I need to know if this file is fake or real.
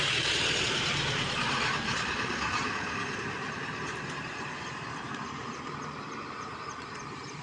fake